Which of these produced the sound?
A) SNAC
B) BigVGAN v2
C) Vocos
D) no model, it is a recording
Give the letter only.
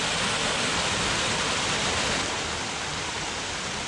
D